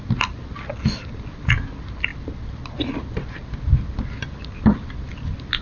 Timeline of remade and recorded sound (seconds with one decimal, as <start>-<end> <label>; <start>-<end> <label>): 0.0-5.6 recorded

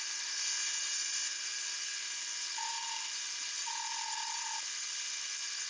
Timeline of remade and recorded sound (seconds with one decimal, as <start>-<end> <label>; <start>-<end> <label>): 0.0-5.7 recorded

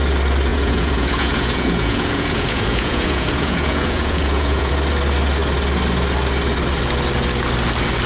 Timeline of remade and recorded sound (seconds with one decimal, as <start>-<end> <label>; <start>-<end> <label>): 0.0-0.5 recorded; 0.5-4.7 remade; 4.7-8.1 recorded

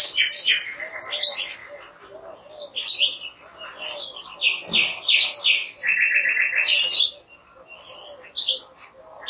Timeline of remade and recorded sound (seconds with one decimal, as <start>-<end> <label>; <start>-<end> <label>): 0.0-9.3 recorded

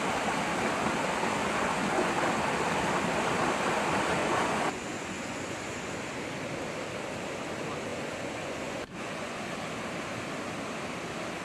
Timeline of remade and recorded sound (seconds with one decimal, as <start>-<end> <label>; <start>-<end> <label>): 0.0-1.4 recorded; 1.4-2.1 remade; 2.1-4.2 recorded; 4.2-5.9 remade; 5.9-7.9 recorded; 7.9-9.4 remade; 9.4-11.4 recorded